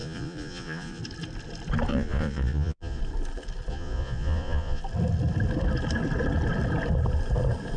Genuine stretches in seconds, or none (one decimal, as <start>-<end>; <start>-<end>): 1.0-1.9; 3.0-3.7; 4.8-7.8